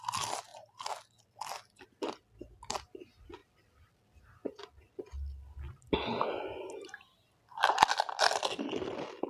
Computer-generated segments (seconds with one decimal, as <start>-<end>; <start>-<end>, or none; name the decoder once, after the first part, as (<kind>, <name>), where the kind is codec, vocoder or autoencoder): none